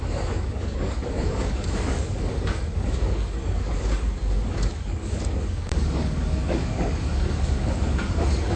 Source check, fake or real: fake